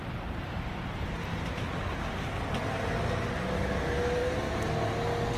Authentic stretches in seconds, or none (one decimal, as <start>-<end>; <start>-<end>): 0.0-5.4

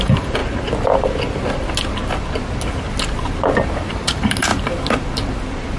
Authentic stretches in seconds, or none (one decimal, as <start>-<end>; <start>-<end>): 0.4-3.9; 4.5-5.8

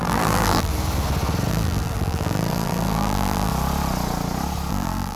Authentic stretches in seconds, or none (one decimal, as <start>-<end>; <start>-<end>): 0.7-1.5; 3.5-4.7